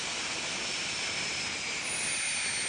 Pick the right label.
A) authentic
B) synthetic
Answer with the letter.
A